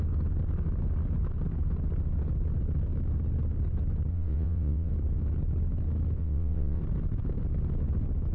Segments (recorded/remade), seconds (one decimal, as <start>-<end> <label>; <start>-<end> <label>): 0.0-4.1 recorded; 4.1-4.9 remade; 4.9-6.2 recorded; 6.2-6.8 remade; 6.8-8.3 recorded